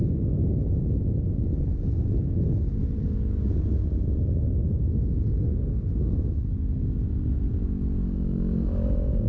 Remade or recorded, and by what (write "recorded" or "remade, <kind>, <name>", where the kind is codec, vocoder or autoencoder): recorded